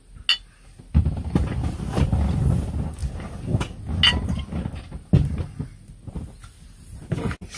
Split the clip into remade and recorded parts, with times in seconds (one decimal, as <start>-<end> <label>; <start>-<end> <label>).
0.0-7.6 recorded